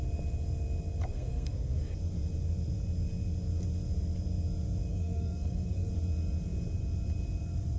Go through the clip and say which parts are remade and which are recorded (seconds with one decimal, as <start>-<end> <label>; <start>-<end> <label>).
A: 0.0-1.1 recorded; 1.1-1.8 remade; 1.8-4.9 recorded; 4.9-5.9 remade; 5.9-7.8 recorded